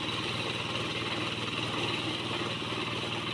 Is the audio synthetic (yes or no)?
no